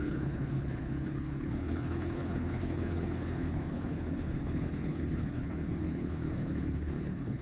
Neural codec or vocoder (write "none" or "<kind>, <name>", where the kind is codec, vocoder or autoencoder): codec, HILCodec